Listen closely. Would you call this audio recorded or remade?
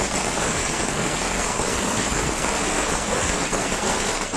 remade